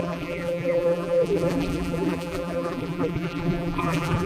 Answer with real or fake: fake